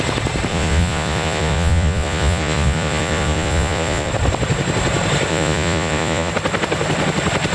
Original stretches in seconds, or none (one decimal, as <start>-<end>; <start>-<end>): 0.0-0.5; 4.1-5.3; 6.3-7.5